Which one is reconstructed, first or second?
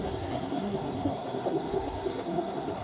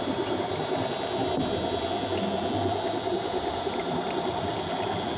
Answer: first